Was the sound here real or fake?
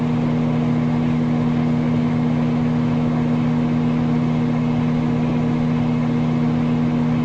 real